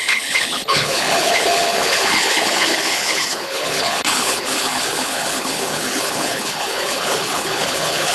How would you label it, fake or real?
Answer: fake